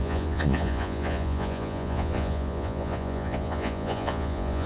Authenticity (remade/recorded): remade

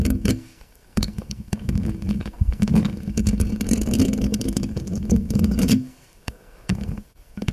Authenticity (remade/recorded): remade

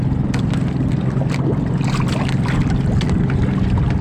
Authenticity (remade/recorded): recorded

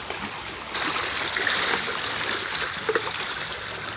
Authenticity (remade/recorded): recorded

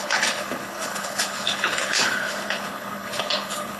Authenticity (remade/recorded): remade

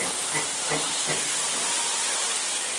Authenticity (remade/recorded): recorded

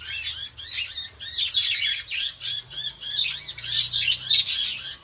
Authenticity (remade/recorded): recorded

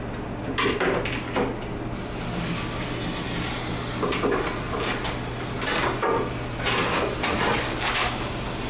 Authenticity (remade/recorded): recorded